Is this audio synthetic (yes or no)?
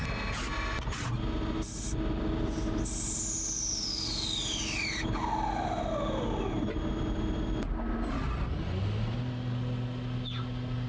no